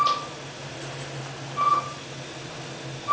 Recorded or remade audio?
recorded